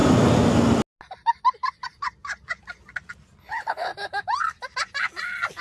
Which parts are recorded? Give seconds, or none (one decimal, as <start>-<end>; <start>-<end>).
0.0-3.4; 3.9-5.6